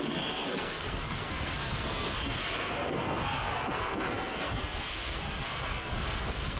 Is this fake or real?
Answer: fake